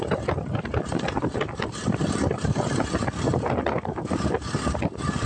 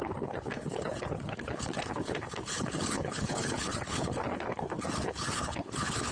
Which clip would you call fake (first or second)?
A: second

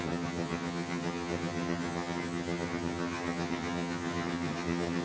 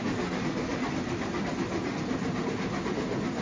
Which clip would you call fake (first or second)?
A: first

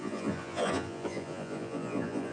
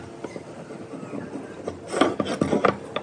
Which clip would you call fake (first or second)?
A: first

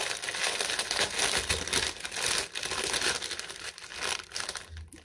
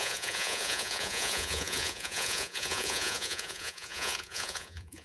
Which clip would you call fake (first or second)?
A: second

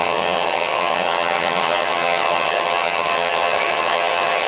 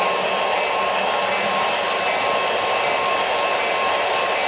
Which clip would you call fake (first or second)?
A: first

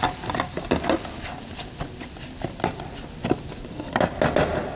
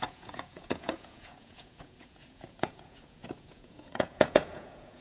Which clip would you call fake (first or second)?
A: second